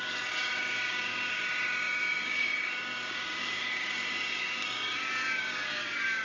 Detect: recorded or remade remade